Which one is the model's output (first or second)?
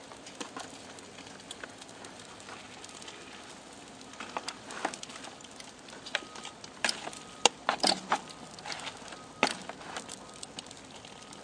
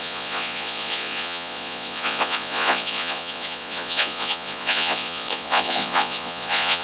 second